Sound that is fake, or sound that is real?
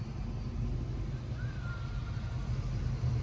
real